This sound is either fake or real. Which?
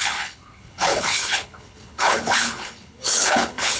fake